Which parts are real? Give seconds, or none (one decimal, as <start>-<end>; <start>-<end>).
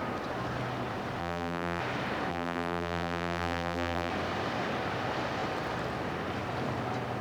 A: 0.0-1.2; 1.8-2.3; 4.1-7.2